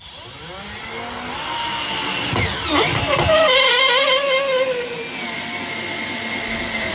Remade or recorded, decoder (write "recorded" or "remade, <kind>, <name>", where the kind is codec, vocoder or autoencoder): recorded